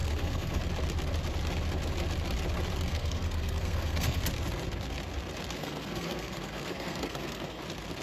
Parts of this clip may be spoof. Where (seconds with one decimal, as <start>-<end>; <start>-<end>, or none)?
0.0-0.6; 2.9-4.2; 5.6-7.6